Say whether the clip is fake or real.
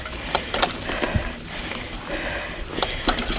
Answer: real